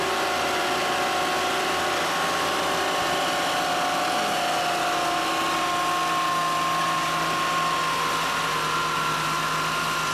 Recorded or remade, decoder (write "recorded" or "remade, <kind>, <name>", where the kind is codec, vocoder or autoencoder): recorded